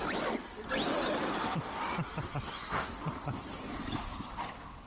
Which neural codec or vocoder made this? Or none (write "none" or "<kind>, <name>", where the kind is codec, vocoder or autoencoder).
none